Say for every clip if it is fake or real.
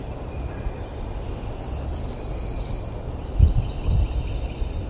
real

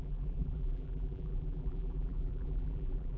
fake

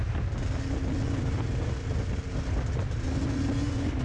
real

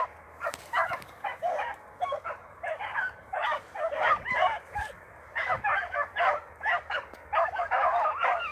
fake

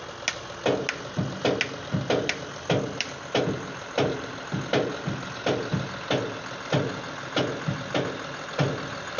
real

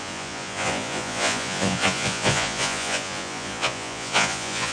fake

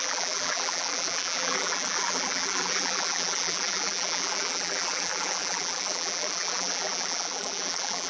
fake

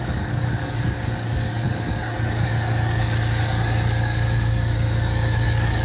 fake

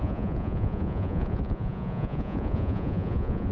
fake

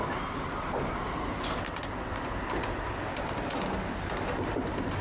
real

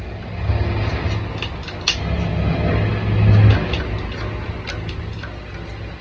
real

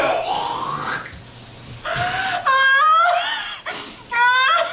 real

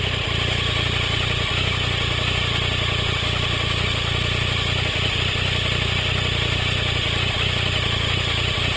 real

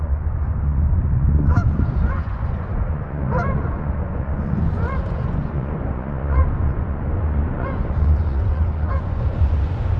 fake